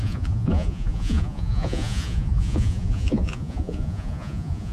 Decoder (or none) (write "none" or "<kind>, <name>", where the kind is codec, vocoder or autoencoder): vocoder, Vocos